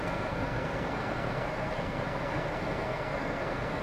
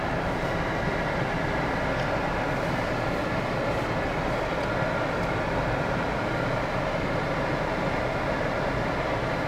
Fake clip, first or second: first